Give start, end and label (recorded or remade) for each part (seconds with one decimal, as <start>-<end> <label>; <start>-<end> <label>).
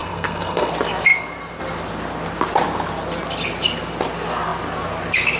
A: 0.0-0.7 remade; 0.7-5.4 recorded